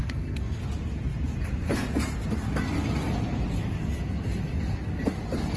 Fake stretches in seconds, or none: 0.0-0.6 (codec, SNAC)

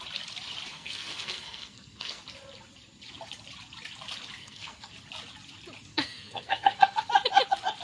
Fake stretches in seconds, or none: 0.7-2.2 (codec, SNAC); 4.4-4.9; 5.9-7.0

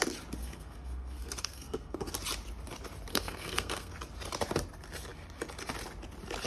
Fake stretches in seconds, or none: 0.4-2.1 (codec, SNAC); 3.1-3.9